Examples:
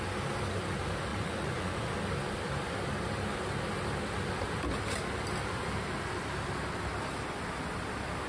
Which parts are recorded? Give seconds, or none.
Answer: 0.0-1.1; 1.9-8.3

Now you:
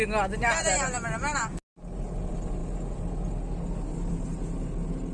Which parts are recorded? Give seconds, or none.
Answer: 0.0-5.1

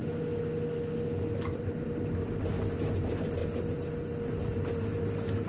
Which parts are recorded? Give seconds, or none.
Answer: 0.0-5.5

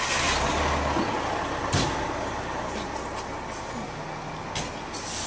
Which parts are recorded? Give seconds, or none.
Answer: 0.0-5.3

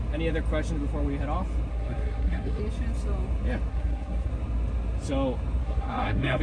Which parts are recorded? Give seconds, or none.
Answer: 0.0-1.7; 2.6-3.7; 4.3-5.6

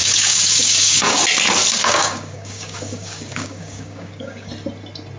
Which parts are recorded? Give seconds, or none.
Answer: 1.2-1.8; 4.5-5.2